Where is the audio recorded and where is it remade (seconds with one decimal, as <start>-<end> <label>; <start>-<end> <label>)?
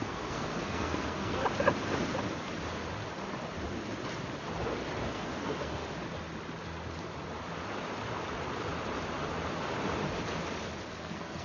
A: 0.0-1.4 remade; 1.4-5.1 recorded; 5.1-5.8 remade; 5.8-10.9 recorded; 10.9-11.4 remade